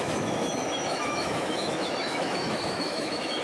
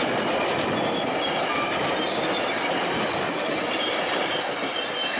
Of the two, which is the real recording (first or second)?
second